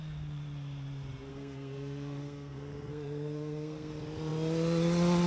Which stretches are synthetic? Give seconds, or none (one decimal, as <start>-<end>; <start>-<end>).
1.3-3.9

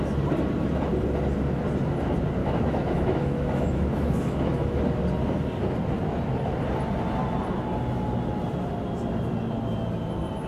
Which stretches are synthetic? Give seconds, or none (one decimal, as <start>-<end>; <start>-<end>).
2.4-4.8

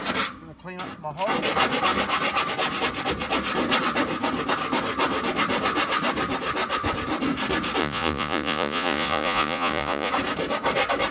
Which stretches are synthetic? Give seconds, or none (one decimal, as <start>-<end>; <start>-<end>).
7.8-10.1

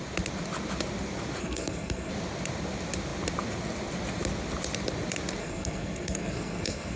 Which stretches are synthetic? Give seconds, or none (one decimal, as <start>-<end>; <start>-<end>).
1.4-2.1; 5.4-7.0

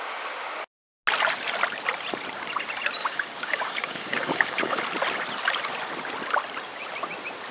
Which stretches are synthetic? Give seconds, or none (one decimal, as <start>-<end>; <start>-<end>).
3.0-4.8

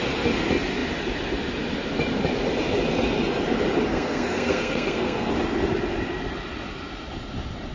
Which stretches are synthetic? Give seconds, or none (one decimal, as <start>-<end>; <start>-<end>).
3.9-5.3